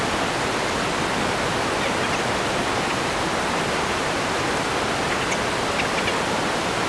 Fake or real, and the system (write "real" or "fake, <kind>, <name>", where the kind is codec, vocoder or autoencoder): real